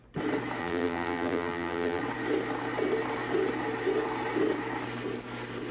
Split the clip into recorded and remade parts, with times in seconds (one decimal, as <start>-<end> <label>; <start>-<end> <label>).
0.0-0.6 recorded; 0.6-2.0 remade; 2.0-5.7 recorded